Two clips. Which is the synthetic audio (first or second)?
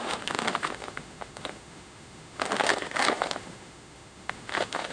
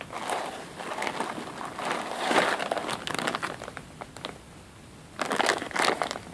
first